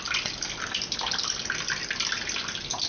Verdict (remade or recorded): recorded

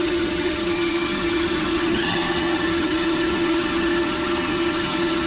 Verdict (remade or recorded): remade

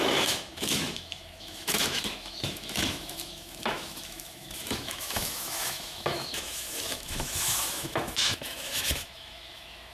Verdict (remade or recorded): remade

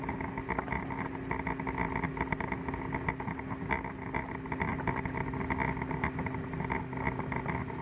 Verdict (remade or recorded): recorded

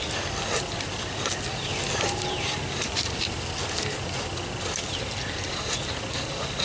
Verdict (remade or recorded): recorded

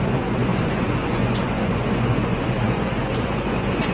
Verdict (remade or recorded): remade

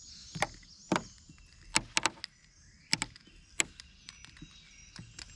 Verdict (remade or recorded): recorded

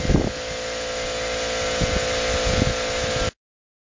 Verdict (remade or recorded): recorded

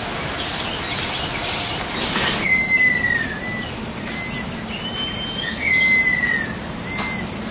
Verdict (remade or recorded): recorded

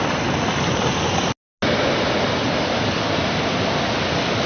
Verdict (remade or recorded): recorded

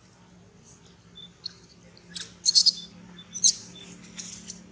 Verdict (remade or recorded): recorded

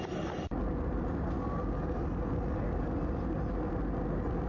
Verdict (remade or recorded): recorded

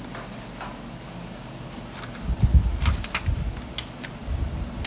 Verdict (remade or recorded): recorded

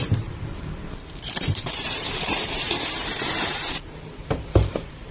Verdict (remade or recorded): remade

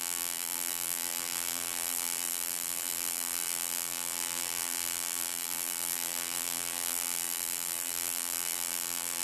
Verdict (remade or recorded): remade